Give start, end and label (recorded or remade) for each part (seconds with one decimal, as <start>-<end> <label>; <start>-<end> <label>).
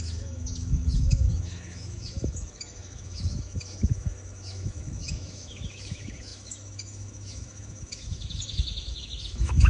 0.0-9.7 remade